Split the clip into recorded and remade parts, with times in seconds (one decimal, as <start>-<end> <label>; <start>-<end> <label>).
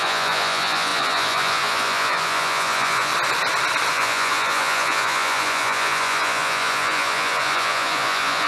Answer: 0.0-3.1 remade; 3.1-3.9 recorded; 3.9-8.5 remade